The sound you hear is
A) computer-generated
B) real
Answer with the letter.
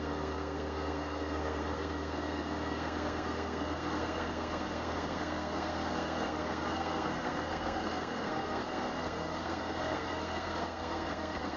A